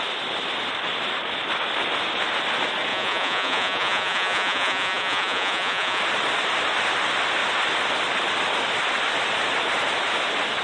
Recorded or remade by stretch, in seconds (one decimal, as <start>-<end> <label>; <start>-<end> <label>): 0.0-2.9 recorded; 2.9-6.0 remade; 6.0-10.6 recorded